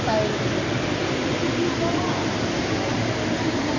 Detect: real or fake real